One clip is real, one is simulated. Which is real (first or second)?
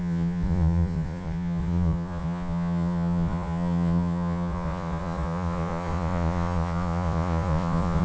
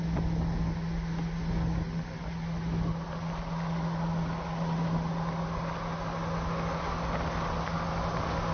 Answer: second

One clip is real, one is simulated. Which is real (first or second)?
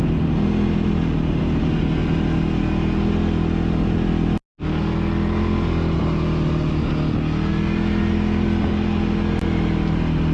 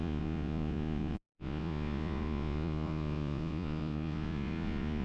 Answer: first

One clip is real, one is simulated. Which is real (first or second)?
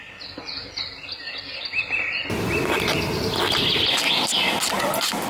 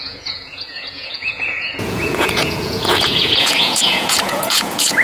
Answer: first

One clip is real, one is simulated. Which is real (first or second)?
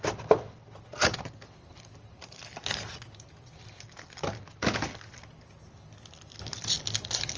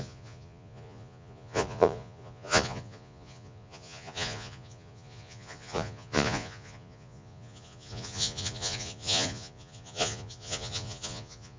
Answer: first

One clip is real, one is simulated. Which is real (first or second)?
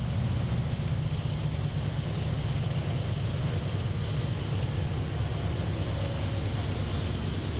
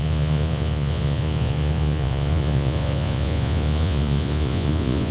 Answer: first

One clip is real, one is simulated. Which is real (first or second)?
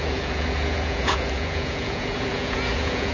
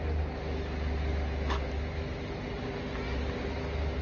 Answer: second